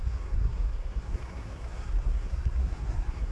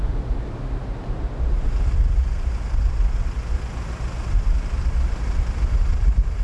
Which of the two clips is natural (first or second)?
second